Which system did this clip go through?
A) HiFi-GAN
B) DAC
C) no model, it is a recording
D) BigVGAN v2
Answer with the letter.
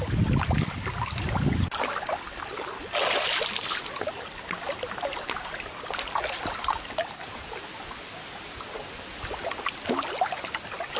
C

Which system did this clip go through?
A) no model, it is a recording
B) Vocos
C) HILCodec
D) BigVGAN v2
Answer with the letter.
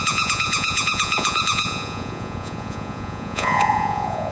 B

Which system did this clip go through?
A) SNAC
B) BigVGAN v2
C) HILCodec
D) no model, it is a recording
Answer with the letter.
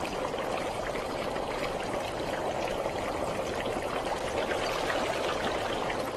B